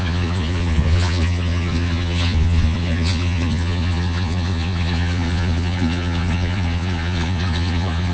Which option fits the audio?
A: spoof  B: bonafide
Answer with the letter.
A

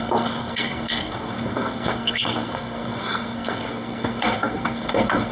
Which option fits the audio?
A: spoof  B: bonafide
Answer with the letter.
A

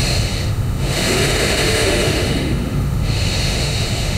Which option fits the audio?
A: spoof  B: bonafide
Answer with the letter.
A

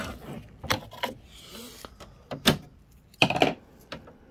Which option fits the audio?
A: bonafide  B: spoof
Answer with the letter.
A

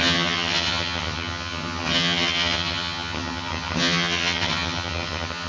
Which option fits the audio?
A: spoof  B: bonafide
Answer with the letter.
A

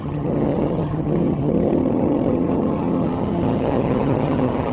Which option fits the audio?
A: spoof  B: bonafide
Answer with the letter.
A